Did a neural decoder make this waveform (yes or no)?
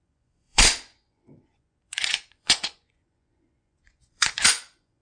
yes